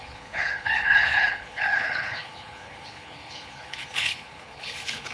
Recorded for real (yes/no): no